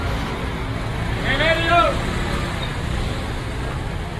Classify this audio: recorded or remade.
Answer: recorded